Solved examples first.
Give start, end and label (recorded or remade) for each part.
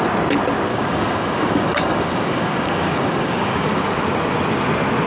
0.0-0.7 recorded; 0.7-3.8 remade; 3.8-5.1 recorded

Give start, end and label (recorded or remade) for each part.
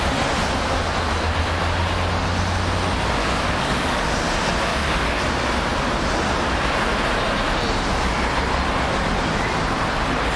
0.0-3.2 recorded; 3.2-4.0 remade; 4.0-4.7 recorded; 4.7-5.2 remade; 5.2-10.4 recorded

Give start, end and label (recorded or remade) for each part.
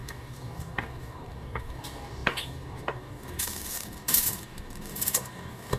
0.0-5.8 remade